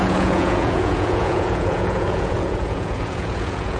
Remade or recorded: remade